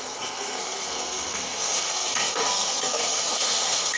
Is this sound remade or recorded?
remade